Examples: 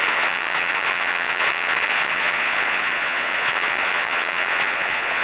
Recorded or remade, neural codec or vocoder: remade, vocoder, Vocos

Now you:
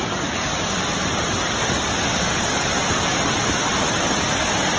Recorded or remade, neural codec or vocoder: recorded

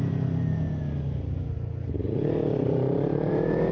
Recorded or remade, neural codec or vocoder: recorded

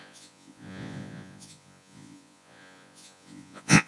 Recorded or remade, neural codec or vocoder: remade, vocoder, Vocos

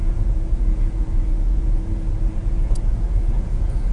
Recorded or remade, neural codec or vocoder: remade, vocoder, Vocos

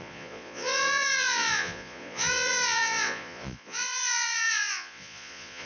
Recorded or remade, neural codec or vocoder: remade, vocoder, Vocos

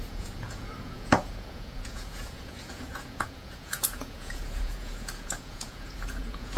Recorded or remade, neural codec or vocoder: remade, vocoder, Vocos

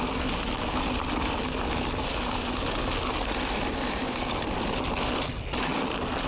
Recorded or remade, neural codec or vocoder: recorded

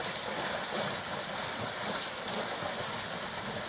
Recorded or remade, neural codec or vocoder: recorded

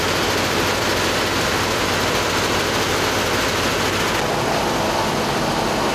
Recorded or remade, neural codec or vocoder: recorded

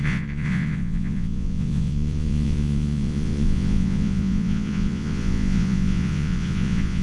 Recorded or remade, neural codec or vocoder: remade, vocoder, Vocos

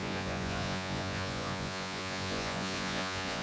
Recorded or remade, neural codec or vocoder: remade, vocoder, Vocos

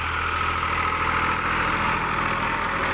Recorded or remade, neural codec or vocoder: recorded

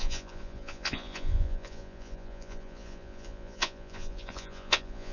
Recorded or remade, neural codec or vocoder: remade, vocoder, Vocos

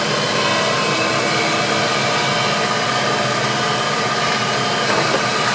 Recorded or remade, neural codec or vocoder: recorded